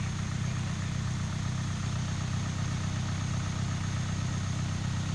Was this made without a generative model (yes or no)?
yes